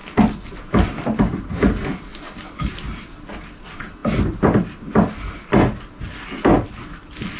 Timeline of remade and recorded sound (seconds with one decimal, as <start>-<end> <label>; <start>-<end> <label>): 0.0-7.4 recorded